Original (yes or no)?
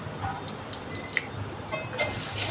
yes